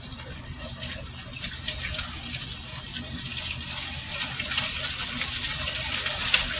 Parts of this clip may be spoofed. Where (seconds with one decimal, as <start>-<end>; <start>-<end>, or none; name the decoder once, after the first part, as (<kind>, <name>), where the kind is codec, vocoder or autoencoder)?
none